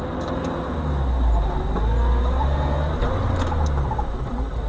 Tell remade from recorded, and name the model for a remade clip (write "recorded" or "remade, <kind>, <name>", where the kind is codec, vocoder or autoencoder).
recorded